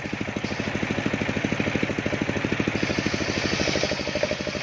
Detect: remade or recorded recorded